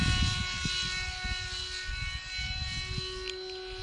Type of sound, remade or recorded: recorded